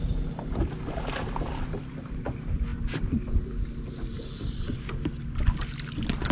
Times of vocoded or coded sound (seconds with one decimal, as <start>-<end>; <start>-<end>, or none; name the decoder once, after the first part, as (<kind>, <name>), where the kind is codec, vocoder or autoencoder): none